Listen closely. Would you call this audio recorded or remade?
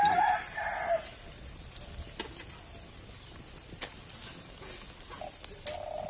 recorded